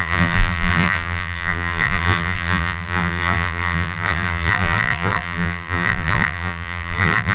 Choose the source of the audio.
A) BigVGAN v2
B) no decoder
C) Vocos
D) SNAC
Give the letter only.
A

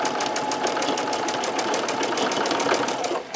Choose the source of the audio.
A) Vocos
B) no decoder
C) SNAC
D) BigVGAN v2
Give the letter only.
B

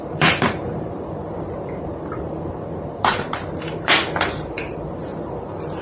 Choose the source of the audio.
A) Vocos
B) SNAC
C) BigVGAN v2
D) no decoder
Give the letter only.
C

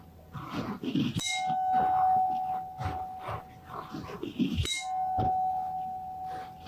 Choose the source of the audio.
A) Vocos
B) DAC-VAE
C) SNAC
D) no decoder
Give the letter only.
D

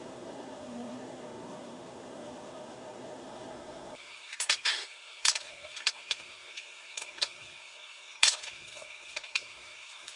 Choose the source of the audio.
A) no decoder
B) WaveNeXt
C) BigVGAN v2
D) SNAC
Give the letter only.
D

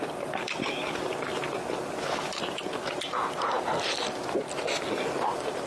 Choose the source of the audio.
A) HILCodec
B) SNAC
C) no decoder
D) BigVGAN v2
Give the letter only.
C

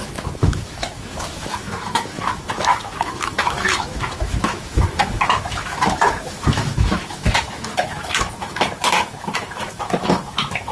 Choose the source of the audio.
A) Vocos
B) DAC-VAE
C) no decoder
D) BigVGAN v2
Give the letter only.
B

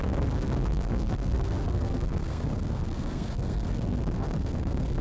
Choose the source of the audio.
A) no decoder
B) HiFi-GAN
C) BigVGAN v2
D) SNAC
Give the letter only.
D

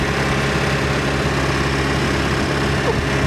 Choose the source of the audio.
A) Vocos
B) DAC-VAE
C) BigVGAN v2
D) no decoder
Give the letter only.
D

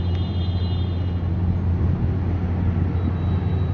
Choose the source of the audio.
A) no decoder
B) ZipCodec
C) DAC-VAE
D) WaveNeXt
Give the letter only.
A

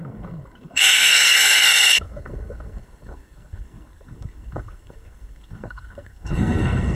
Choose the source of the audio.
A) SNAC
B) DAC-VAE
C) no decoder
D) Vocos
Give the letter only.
A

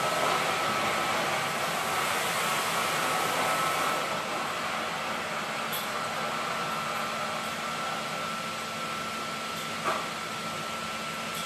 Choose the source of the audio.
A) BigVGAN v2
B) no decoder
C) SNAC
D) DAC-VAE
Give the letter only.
B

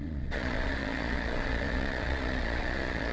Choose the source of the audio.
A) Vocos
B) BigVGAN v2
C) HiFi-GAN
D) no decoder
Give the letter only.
A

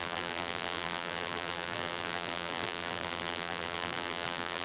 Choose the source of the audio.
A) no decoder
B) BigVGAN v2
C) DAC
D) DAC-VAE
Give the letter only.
B